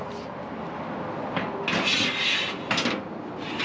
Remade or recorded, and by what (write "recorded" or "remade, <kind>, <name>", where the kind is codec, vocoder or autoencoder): recorded